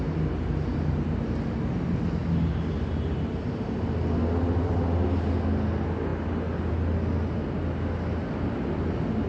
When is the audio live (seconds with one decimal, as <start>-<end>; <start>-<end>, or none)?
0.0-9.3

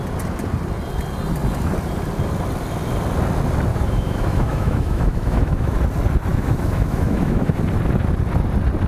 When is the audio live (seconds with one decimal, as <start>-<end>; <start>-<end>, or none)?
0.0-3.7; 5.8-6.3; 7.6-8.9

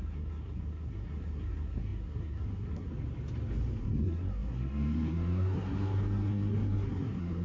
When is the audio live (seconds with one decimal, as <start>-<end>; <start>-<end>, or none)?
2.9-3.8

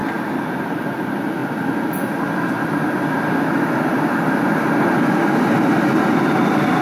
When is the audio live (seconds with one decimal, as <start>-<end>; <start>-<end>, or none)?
0.0-6.8